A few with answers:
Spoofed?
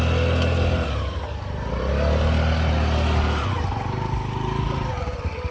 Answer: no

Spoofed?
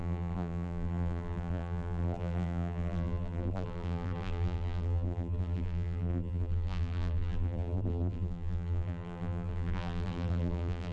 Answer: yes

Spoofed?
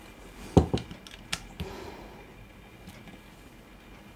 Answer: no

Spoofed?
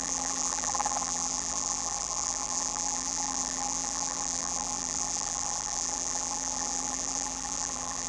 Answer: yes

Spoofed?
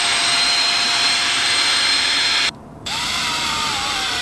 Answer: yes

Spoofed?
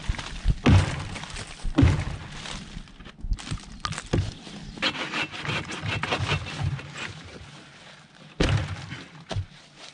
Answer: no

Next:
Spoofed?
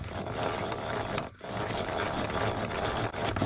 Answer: no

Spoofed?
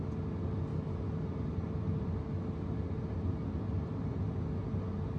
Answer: no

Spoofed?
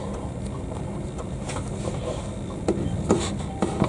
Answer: yes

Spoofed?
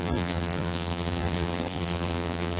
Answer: yes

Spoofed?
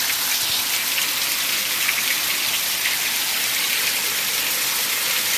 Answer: yes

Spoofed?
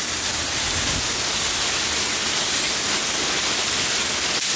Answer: no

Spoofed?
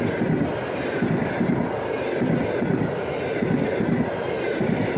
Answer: no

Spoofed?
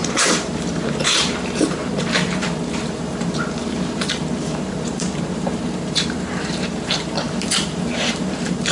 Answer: yes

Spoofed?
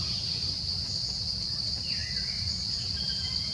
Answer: no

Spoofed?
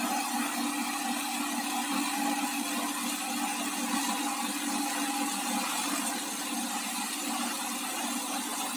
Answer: no